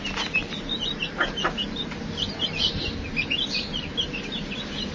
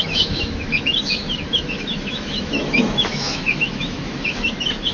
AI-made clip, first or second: second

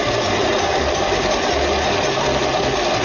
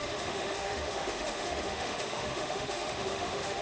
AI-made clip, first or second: second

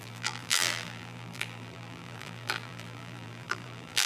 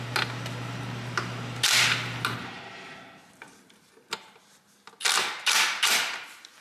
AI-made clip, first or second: first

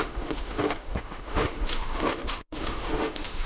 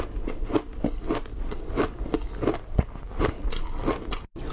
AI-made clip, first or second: first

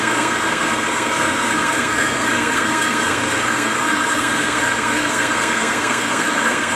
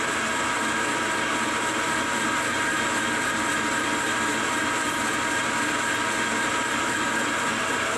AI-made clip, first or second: first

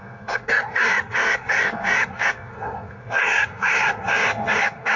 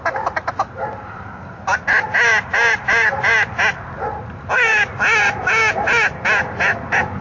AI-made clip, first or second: first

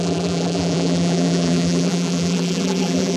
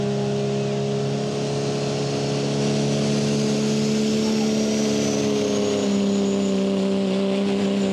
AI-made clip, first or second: first